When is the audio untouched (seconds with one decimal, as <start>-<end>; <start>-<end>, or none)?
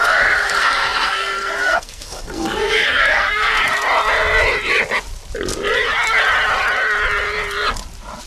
3.6-8.3